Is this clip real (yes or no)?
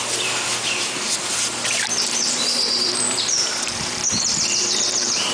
no